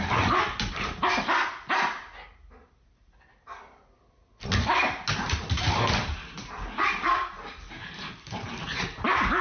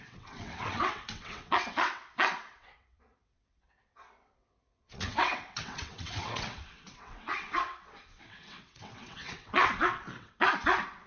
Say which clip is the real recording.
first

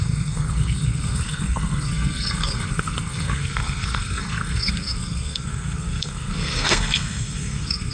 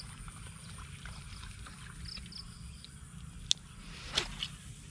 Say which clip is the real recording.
second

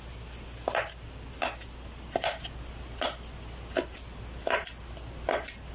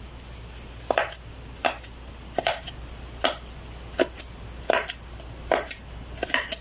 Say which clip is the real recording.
first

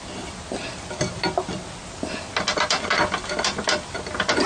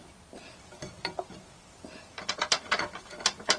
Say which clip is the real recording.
first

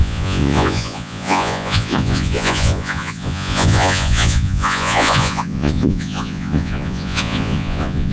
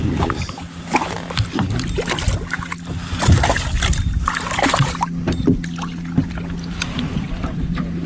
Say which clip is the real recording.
second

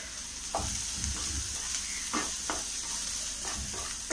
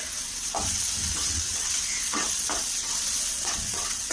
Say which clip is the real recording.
first